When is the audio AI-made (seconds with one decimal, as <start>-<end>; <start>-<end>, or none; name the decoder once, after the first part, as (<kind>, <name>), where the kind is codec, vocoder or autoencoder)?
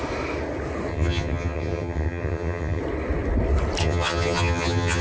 0.9-2.8 (vocoder, HiFi-GAN); 3.8-5.0